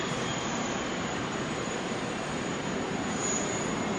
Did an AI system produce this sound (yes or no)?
yes